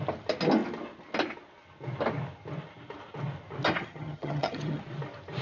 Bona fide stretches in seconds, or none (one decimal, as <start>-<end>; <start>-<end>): 0.0-3.8; 4.8-5.4